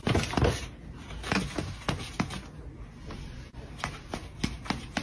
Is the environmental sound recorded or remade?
recorded